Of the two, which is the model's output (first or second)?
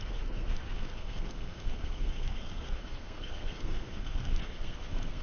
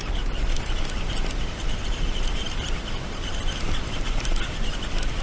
first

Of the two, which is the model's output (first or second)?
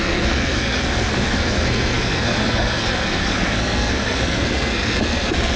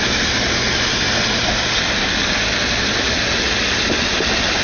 first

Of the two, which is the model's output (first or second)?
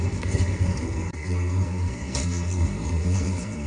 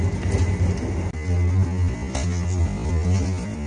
first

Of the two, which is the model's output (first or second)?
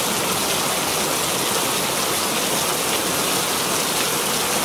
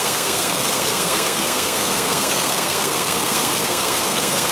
second